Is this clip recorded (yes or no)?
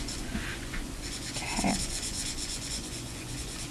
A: no